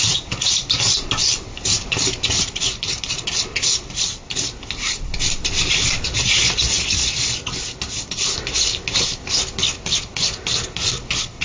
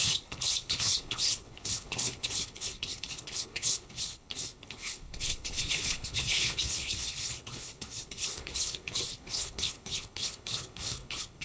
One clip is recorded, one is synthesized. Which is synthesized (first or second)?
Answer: second